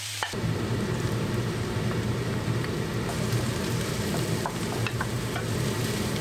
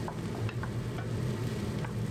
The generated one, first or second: first